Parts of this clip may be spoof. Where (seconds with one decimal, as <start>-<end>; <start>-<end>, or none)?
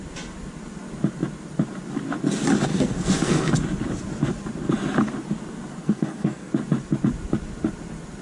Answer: 2.7-3.5; 5.8-6.5